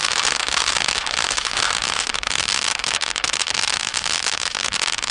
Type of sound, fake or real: fake